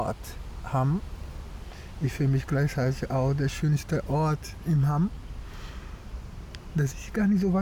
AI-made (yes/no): no